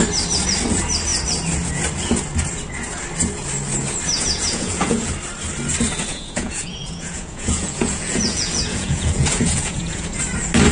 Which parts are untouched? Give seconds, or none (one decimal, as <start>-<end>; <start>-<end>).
0.0-4.1; 5.1-6.1; 10.2-10.7